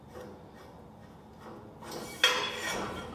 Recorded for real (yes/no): yes